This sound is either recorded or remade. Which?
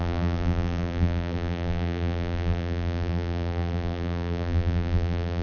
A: remade